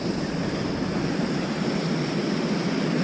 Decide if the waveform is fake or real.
fake